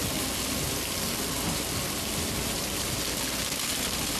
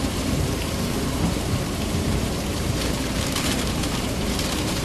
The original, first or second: first